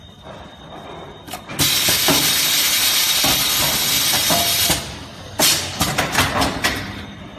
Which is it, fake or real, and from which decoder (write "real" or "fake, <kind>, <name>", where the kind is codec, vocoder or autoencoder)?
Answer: real